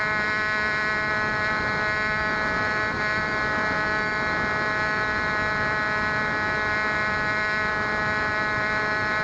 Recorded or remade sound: recorded